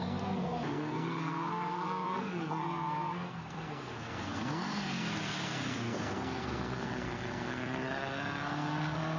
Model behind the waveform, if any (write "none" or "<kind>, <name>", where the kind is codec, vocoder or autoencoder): codec, SNAC